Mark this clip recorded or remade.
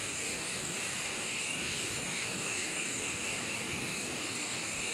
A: remade